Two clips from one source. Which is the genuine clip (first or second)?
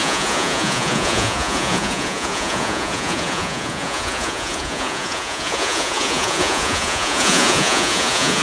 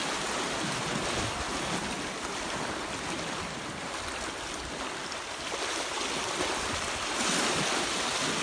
second